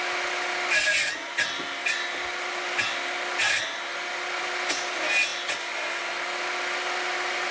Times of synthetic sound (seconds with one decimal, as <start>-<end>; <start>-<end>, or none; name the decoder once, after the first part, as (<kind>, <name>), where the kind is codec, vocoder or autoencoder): none